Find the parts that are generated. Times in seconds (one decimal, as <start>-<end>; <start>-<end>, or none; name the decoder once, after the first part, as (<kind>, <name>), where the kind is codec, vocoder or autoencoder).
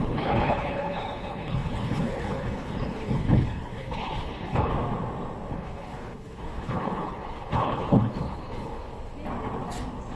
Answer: 0.0-4.7 (codec, HILCodec); 5.5-8.9